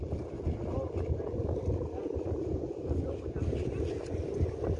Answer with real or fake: real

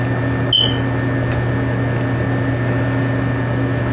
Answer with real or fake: real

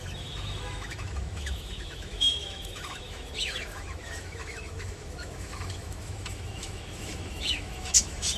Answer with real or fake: fake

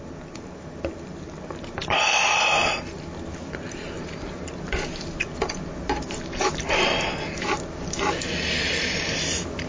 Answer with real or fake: real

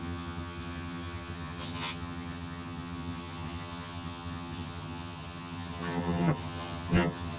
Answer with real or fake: fake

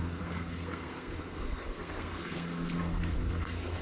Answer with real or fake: fake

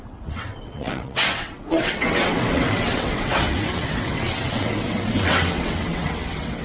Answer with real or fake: fake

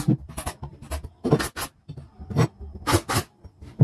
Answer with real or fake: real